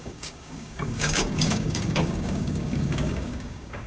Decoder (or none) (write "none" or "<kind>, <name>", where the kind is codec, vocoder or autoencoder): codec, DAC